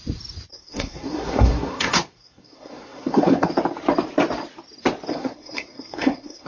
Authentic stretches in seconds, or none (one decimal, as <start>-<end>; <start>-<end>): 0.0-0.5; 3.5-5.1